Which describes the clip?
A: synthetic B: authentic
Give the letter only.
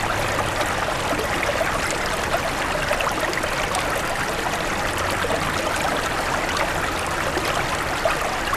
B